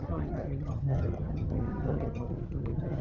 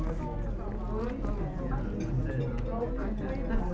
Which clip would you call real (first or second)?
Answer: second